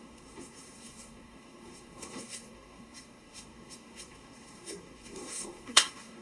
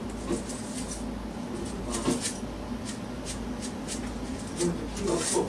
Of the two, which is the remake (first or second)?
first